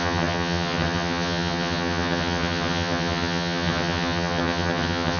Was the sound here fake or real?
fake